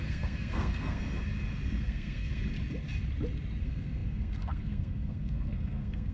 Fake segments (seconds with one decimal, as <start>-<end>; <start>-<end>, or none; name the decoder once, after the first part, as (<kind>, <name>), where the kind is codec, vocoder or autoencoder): 0.0-1.0 (codec, SNAC); 1.8-2.4; 3.6-6.1